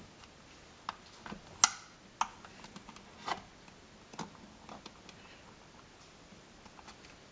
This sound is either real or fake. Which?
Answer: real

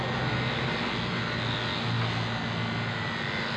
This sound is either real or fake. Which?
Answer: real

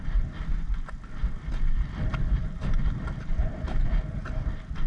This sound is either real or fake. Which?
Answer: real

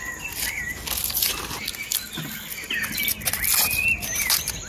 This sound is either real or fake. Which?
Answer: real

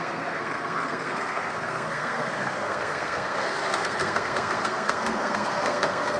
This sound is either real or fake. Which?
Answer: fake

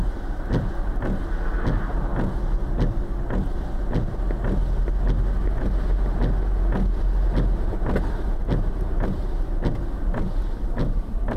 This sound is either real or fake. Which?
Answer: real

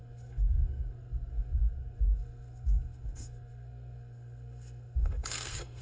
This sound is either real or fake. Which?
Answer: fake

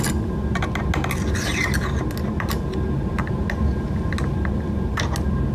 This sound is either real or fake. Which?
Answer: real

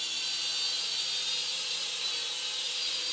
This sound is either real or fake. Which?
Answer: real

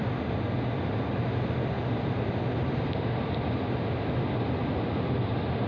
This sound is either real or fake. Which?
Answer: real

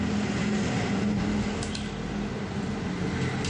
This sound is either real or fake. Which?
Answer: real